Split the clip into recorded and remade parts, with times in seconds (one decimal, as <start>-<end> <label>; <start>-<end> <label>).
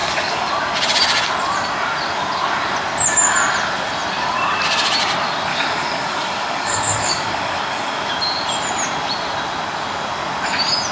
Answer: 0.0-0.5 remade; 0.5-5.5 recorded; 5.5-8.1 remade; 8.1-10.9 recorded